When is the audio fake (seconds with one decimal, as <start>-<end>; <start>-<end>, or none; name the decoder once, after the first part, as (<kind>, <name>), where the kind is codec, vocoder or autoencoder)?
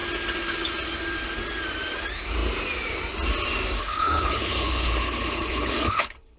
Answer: 3.8-6.4 (codec, HILCodec)